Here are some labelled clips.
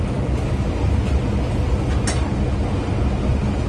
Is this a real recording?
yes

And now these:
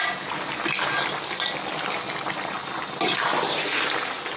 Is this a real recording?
yes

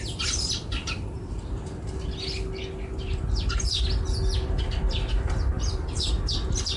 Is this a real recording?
yes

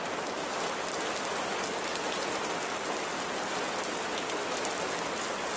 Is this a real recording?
yes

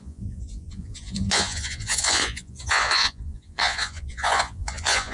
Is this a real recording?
no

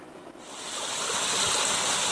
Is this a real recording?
yes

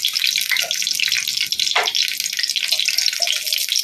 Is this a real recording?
yes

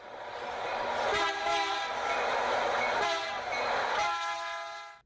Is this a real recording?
yes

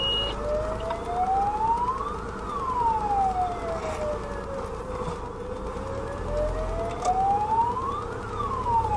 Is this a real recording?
yes